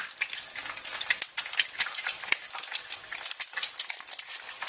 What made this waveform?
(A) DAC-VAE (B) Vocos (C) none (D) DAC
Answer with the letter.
C